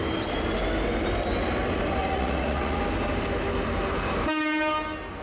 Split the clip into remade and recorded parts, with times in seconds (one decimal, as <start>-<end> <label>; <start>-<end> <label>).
0.0-2.0 recorded; 2.0-2.8 remade; 2.8-5.2 recorded